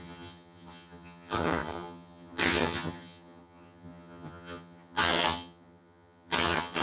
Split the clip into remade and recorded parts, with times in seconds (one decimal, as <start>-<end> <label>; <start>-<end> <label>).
0.0-6.8 remade